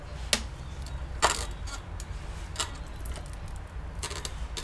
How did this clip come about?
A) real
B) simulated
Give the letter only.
A